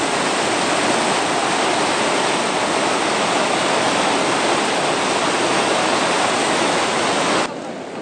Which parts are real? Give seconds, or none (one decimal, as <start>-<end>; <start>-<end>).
0.0-6.4; 7.0-8.0